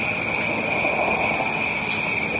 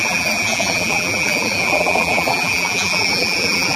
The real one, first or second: first